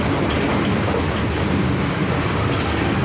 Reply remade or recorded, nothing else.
recorded